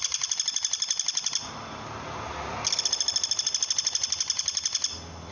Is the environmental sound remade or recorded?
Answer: recorded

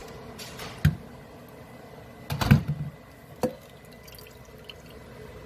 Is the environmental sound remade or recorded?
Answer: recorded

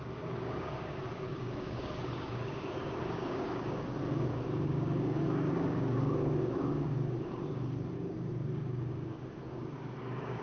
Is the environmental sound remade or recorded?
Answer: remade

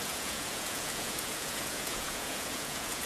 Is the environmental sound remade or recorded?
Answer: remade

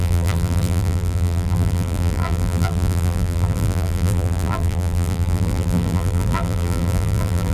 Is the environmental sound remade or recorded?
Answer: remade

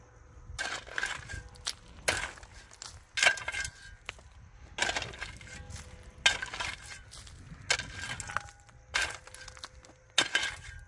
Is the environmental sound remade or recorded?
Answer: recorded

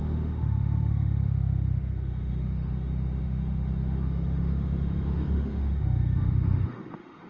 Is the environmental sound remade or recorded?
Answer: remade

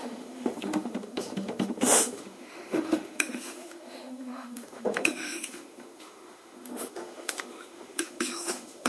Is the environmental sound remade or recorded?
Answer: remade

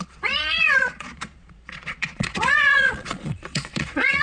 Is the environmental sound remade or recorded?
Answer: remade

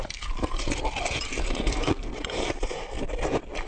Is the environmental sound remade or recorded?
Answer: recorded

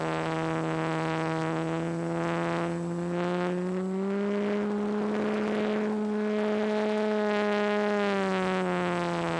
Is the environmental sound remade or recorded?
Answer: recorded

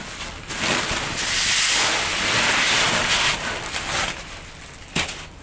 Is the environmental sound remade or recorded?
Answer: recorded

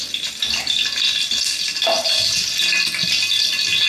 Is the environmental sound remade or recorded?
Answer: recorded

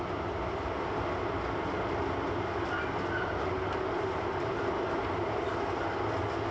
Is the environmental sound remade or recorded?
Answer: recorded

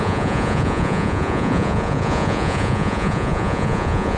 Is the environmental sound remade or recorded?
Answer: remade